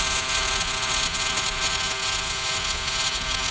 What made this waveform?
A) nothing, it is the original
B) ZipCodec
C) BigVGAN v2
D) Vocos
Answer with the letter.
D